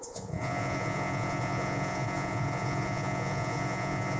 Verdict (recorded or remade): remade